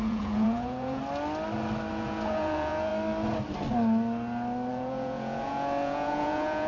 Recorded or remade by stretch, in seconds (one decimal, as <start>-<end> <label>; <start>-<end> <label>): 0.0-1.0 remade; 1.0-1.9 recorded; 1.9-2.9 remade; 2.9-4.7 recorded; 4.7-6.7 remade